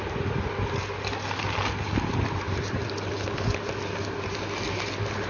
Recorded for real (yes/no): yes